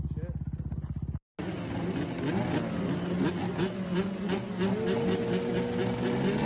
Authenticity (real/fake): real